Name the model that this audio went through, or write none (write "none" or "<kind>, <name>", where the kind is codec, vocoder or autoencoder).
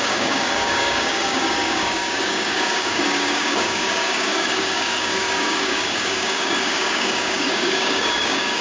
codec, DAC